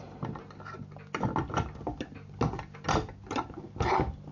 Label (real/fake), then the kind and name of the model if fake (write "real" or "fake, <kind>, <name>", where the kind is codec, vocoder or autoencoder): real